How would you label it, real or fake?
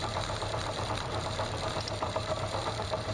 fake